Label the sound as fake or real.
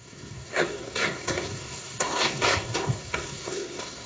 fake